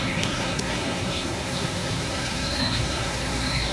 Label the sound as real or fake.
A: fake